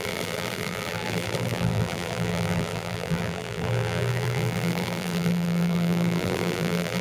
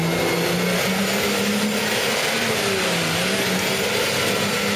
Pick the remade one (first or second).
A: first